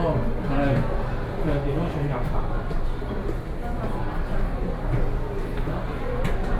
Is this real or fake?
real